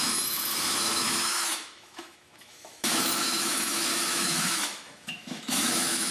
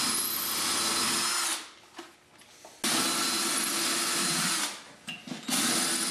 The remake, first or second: first